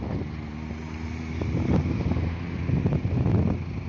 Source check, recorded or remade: recorded